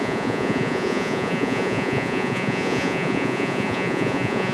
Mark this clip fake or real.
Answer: fake